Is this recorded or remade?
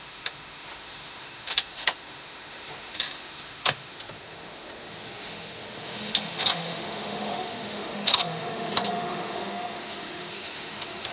remade